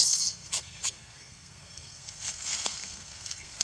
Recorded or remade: remade